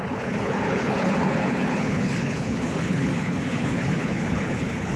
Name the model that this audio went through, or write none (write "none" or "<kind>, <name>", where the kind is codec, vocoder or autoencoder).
codec, HILCodec